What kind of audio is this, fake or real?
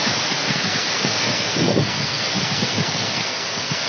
fake